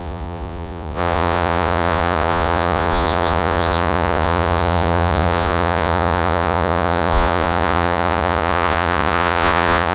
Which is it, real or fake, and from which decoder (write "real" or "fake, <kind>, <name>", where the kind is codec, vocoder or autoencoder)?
fake, vocoder, Vocos